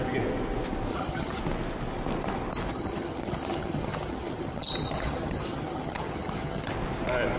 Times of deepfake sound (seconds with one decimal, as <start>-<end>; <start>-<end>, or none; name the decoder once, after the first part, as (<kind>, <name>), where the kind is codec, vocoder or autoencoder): 0.9-1.4 (vocoder, HiFi-GAN); 2.7-6.7